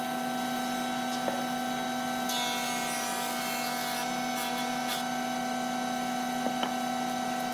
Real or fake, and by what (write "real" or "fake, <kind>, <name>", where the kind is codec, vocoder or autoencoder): real